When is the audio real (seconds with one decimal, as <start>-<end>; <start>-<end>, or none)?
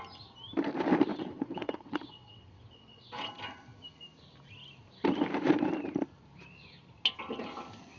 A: 0.0-1.1; 3.3-8.0